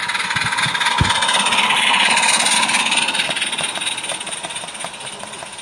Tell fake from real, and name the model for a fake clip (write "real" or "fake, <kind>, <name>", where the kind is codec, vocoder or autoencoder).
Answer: real